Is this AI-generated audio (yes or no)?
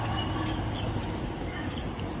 no